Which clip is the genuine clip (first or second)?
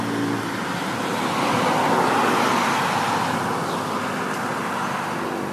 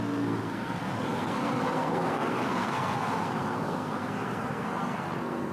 first